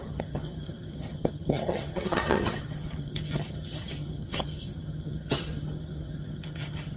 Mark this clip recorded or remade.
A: remade